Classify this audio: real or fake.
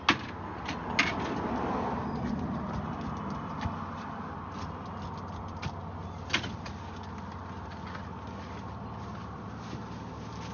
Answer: real